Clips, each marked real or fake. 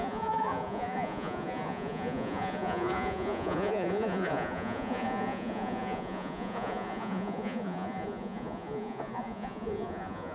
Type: fake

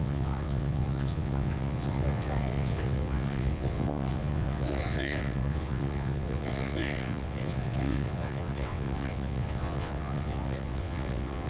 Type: fake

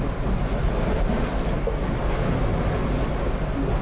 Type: real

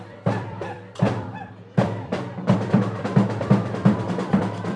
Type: fake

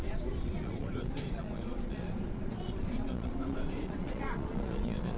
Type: fake